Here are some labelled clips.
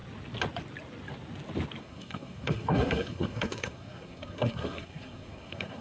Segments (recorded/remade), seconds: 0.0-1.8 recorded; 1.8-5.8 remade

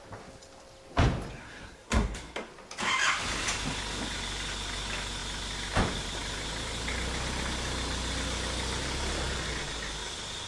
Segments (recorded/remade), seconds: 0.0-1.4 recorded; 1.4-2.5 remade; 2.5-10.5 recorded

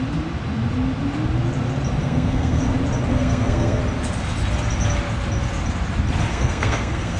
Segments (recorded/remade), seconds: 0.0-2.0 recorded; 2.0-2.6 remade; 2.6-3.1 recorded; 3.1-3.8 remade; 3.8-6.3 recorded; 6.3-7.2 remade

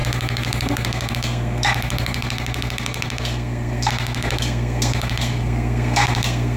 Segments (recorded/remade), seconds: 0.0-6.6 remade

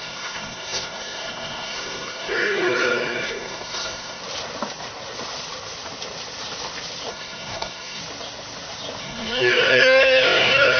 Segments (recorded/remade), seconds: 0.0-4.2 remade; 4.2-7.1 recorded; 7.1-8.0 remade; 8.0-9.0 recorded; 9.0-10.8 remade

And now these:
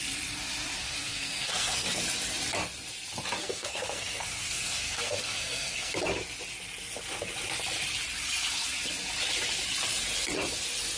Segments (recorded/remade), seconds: 0.0-0.8 recorded; 0.8-2.0 remade; 2.0-3.4 recorded; 3.4-5.9 remade; 5.9-11.0 recorded

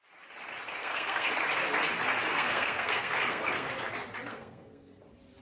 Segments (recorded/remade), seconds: 0.0-0.8 recorded; 0.8-1.3 remade; 1.3-2.3 recorded; 2.3-3.7 remade; 3.7-4.3 recorded; 4.3-5.0 remade; 5.0-5.4 recorded